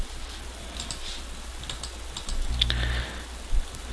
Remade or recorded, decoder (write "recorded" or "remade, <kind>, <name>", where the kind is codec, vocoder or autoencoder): recorded